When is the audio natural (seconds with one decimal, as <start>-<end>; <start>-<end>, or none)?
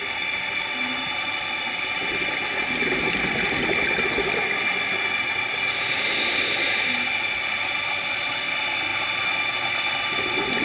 0.0-10.6